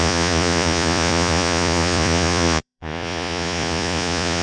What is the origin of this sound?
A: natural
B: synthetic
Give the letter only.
B